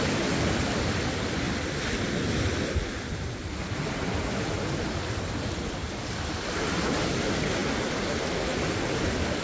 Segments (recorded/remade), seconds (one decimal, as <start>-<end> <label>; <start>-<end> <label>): 0.0-9.4 recorded